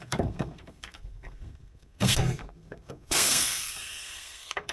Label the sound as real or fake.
fake